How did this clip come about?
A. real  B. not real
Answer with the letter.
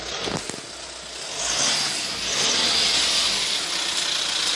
A